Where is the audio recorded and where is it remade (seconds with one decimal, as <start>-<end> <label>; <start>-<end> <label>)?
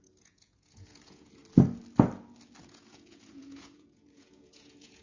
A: 0.0-1.4 remade; 1.4-2.6 recorded; 2.6-5.0 remade